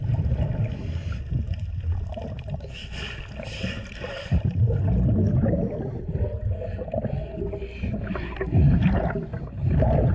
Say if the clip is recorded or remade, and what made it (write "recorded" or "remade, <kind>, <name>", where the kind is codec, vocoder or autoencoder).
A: recorded